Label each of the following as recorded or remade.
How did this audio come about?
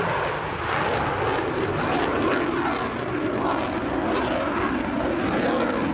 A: recorded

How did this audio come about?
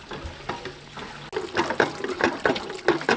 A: recorded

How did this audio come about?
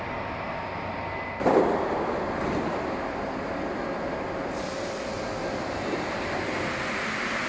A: recorded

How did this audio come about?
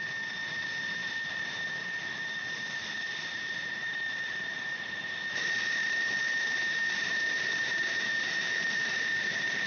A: remade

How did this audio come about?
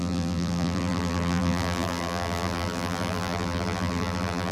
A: remade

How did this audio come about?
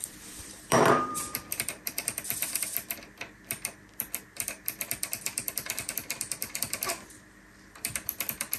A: remade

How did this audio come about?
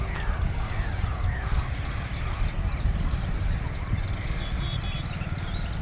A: recorded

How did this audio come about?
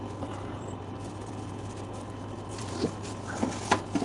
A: recorded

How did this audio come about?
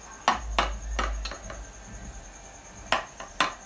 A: recorded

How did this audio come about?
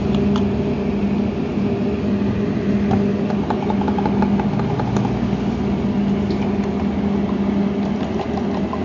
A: recorded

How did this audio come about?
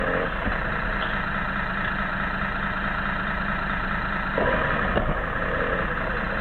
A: recorded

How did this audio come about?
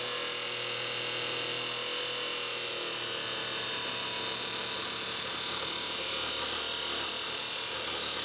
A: recorded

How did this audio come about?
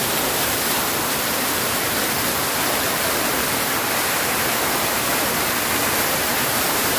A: remade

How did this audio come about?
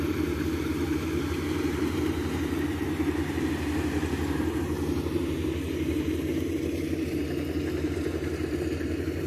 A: remade